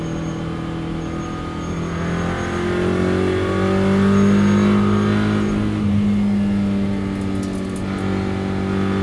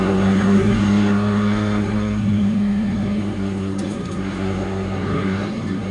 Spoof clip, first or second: second